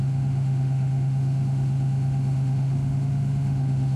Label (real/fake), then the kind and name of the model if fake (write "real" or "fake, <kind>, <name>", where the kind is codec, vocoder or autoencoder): fake, autoencoder, DAC-VAE